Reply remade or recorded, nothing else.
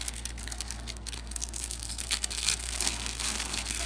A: remade